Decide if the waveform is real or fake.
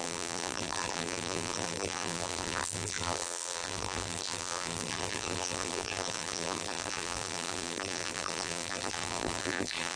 fake